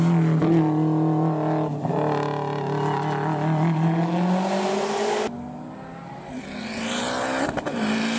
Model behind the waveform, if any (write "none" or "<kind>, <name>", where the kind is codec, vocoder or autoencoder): none